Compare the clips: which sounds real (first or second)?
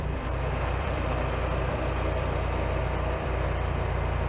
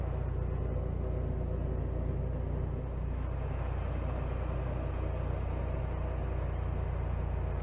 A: second